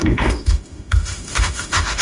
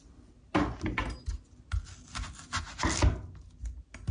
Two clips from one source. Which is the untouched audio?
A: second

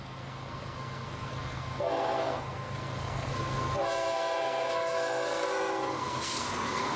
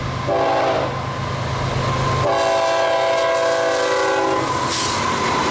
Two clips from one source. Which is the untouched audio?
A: second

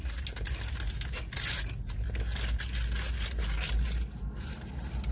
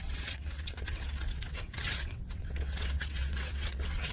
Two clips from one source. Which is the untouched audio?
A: first